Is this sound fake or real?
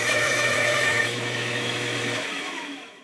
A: fake